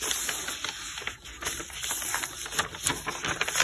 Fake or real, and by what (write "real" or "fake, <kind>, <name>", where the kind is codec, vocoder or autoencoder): real